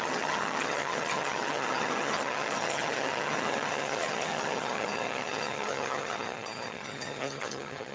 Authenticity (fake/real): fake